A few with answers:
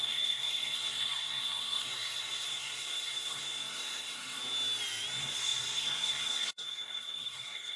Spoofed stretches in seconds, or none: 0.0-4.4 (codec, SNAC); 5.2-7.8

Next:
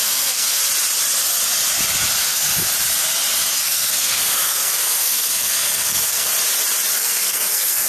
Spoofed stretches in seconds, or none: 0.0-0.6 (codec, SNAC); 3.6-6.3; 6.9-7.9

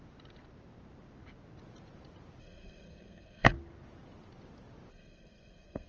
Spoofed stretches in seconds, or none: 2.4-3.5 (codec, SNAC); 4.9-5.9

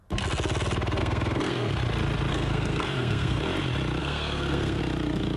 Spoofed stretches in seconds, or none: 1.0-1.7 (codec, SNAC); 2.3-3.4; 4.0-4.8

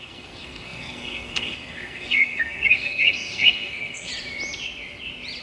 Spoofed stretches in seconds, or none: 0.0-4.1 (codec, SNAC)